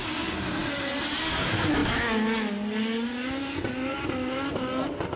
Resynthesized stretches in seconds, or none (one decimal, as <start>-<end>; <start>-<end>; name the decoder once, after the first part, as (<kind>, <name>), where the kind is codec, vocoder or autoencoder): none